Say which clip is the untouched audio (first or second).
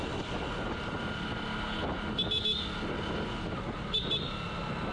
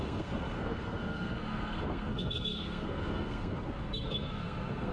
first